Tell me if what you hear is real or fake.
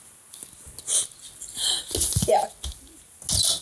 real